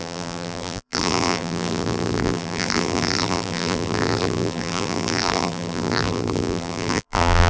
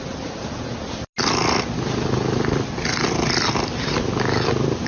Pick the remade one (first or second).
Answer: first